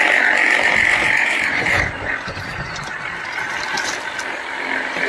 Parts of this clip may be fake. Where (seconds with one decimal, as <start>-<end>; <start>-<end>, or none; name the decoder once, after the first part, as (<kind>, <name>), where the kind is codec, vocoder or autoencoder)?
0.9-2.9 (vocoder, Vocos)